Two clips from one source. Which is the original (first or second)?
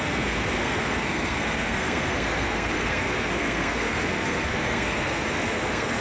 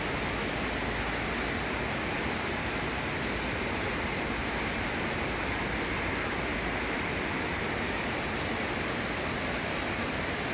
second